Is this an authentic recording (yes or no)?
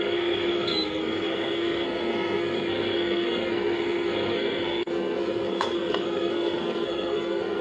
no